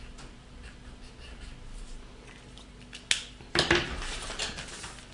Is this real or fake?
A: real